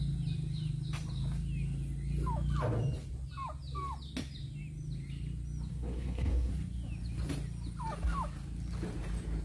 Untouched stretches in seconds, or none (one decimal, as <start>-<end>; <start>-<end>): 0.0-5.7; 6.5-9.4